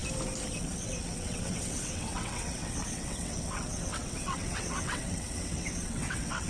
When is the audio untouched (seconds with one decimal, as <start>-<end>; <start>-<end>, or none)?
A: 0.0-0.6